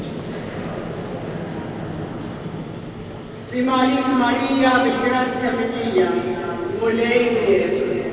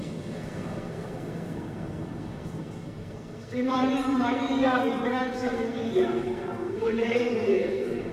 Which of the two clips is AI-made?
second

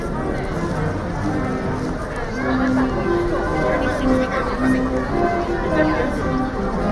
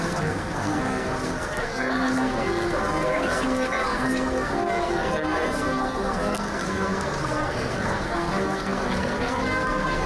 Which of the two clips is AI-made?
second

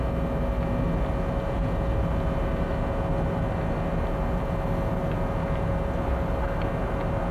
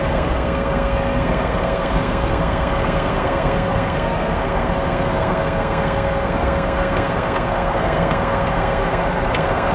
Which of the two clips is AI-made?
second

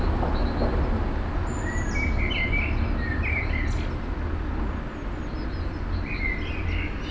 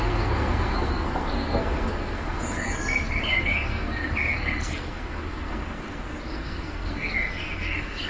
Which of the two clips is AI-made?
second